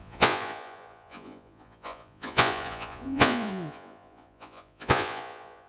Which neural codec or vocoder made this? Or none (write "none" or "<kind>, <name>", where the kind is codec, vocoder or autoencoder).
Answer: vocoder, Vocos